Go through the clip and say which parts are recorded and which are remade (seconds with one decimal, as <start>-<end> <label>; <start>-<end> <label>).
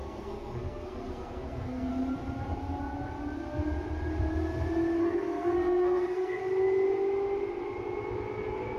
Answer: 0.0-1.9 remade; 1.9-5.0 recorded; 5.0-6.4 remade; 6.4-8.8 recorded